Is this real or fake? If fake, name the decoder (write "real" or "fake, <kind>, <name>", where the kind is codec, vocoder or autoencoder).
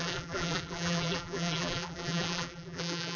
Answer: fake, vocoder, BigVGAN v2